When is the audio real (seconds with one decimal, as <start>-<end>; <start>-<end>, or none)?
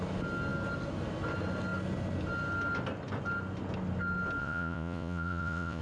0.0-4.4